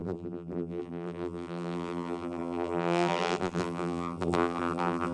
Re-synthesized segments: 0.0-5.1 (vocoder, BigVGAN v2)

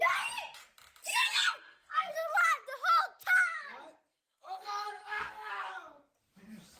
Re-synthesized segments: 1.1-2.1 (codec, SNAC); 4.1-5.5

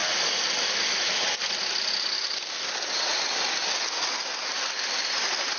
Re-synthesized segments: none

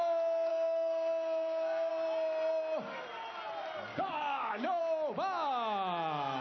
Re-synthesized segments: 0.5-1.9 (codec, DAC); 3.9-4.8

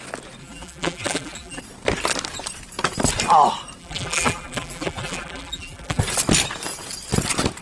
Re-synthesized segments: 0.4-1.6 (vocoder, BigVGAN v2); 3.8-6.0

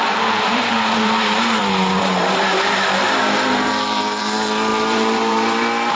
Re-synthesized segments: 0.0-5.9 (vocoder, BigVGAN v2)